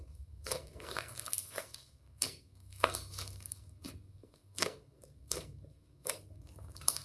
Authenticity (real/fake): fake